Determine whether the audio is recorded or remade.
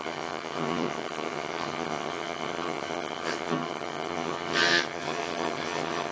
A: remade